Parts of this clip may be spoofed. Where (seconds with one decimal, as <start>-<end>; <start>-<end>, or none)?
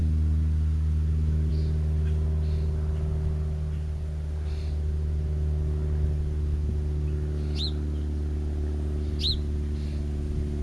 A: none